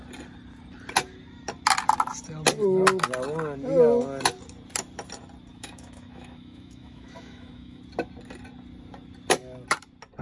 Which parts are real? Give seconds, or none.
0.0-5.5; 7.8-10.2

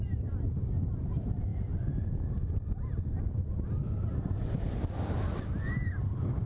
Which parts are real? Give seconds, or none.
none

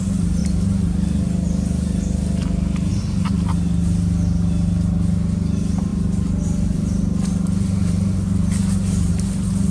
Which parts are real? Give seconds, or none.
0.0-5.9; 9.1-9.7

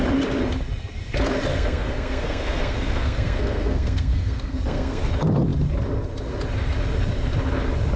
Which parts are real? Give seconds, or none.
0.0-1.5; 5.1-8.0